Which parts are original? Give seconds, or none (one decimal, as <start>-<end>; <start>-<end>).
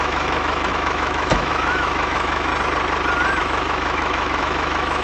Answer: 2.5-3.4